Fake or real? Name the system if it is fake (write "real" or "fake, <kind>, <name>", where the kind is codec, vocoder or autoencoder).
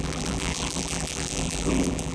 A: fake, vocoder, BigVGAN v2